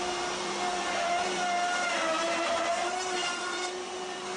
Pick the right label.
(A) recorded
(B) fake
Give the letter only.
B